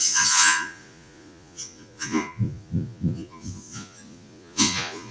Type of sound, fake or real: fake